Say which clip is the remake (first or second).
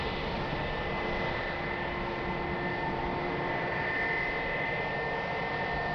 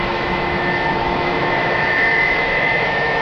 second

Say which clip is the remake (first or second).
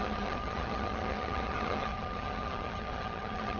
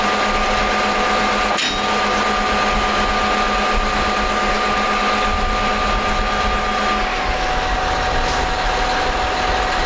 first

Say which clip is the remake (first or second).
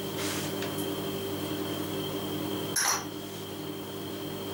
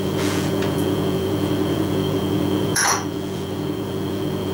second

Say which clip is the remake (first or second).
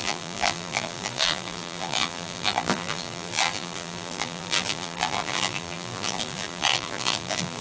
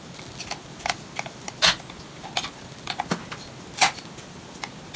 first